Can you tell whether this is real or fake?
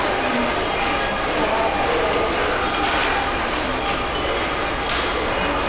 real